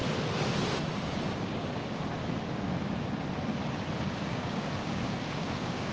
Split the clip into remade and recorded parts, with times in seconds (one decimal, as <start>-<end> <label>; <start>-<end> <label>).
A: 0.0-1.4 recorded; 1.4-2.2 remade; 2.2-4.0 recorded; 4.0-5.9 remade

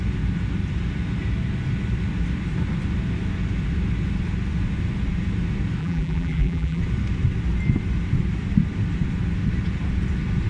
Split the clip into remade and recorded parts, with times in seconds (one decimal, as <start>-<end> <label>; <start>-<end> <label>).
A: 0.0-5.8 recorded; 5.8-6.8 remade; 6.8-10.5 recorded

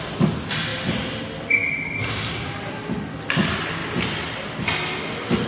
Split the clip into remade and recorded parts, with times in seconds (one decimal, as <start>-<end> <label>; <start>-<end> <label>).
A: 0.0-5.5 recorded